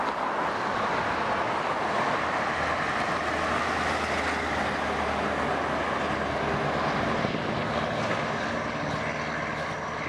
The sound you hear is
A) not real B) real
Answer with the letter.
B